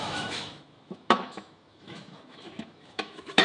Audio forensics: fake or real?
fake